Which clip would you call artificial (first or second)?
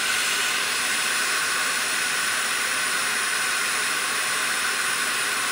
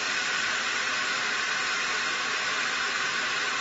first